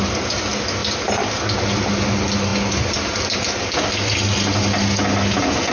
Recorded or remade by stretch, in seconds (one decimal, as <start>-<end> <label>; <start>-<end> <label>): 0.0-5.7 recorded